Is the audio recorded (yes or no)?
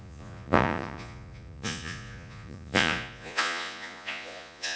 no